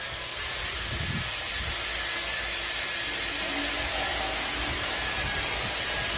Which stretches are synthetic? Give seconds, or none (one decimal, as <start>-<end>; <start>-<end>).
4.1-5.1